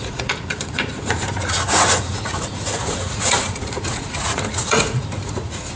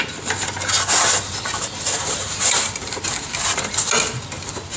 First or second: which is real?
second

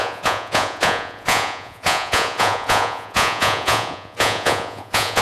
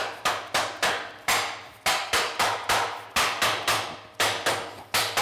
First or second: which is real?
second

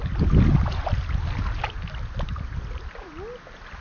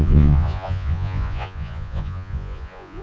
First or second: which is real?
first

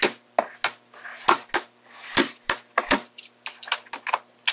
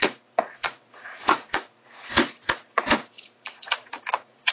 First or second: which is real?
first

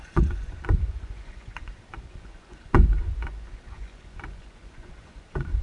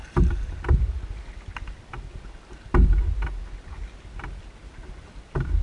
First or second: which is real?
second